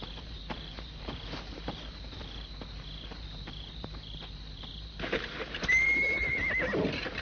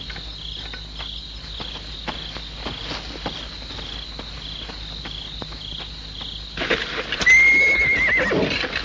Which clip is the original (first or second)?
second